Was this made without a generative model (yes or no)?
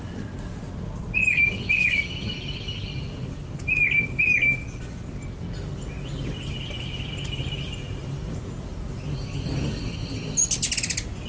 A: yes